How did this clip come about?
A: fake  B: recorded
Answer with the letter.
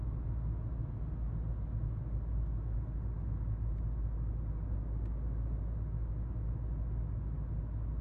B